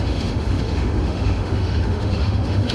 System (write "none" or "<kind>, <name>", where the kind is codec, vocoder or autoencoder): autoencoder, DAC-VAE